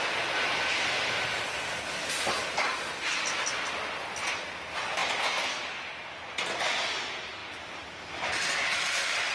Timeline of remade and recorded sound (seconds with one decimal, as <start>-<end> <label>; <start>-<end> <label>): 0.0-9.3 recorded